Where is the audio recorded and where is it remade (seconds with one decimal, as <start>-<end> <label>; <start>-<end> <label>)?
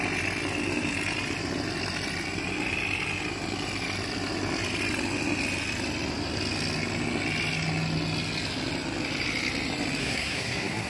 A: 0.0-10.0 recorded; 10.0-10.9 remade